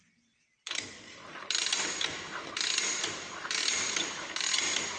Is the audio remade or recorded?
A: recorded